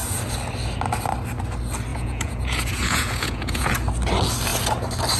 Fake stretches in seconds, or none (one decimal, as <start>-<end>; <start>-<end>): 1.9-3.7